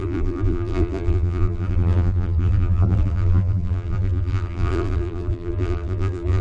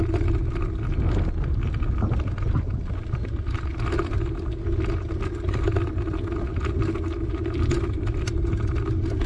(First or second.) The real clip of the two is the second